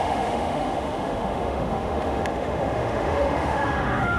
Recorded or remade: remade